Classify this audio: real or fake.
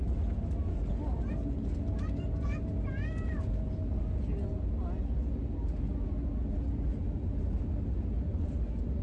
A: real